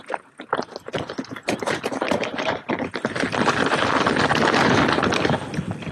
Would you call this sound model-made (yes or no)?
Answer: no